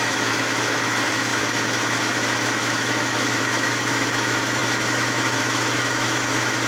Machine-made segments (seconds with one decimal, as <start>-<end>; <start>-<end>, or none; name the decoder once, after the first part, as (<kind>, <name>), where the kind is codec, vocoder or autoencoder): 0.0-6.7 (autoencoder, DAC-VAE)